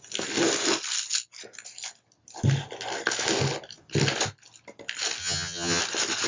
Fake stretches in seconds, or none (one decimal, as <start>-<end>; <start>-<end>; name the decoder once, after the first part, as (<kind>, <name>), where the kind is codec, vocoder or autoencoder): 5.2-5.8 (vocoder, HiFi-GAN)